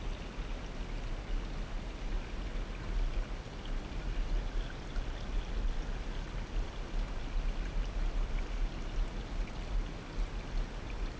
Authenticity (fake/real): real